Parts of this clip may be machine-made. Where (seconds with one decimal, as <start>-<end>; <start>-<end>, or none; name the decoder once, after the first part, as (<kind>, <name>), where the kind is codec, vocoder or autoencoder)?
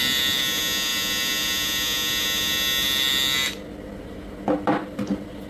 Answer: none